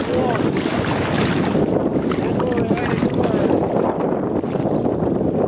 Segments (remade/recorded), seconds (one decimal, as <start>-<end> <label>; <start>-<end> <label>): 0.0-5.5 recorded